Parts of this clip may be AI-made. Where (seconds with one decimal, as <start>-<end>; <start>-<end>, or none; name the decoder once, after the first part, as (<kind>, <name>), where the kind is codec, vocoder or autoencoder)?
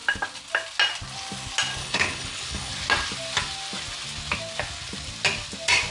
1.8-2.7 (codec, HILCodec)